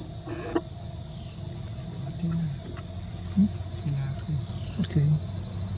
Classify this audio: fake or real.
real